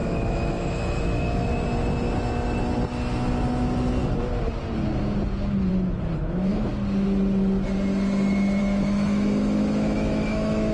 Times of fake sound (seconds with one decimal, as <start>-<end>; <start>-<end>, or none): 0.0-1.5; 5.7-6.7; 8.6-10.7